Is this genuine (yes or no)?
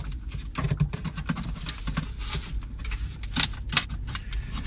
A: yes